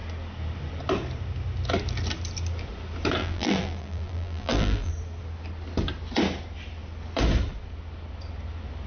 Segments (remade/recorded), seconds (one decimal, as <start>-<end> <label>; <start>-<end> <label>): 0.0-3.2 recorded; 3.2-4.9 remade; 4.9-8.9 recorded